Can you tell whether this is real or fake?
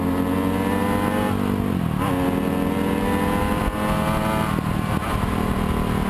real